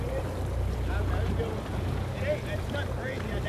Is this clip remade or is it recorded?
recorded